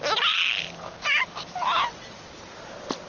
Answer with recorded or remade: recorded